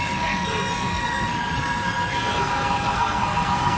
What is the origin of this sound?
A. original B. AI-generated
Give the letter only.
B